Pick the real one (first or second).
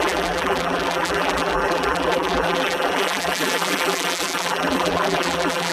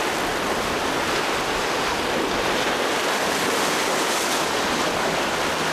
second